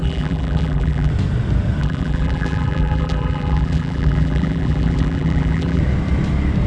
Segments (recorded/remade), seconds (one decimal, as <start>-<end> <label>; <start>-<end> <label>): 0.0-1.1 remade; 1.1-1.8 recorded; 1.8-5.8 remade; 5.8-6.7 recorded